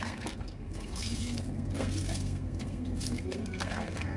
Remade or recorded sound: remade